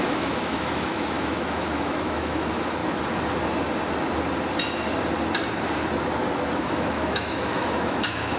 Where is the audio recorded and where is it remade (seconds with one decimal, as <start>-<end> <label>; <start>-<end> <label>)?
0.0-2.8 remade; 2.8-6.6 recorded; 6.6-8.4 remade